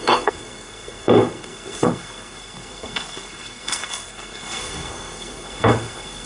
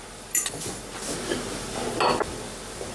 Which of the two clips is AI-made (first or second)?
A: first